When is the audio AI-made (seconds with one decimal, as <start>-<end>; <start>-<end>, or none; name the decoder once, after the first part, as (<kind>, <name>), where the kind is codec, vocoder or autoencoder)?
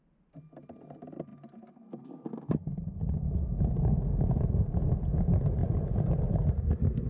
none